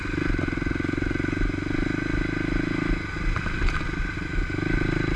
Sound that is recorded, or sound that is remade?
recorded